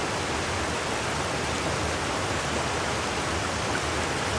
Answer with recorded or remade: recorded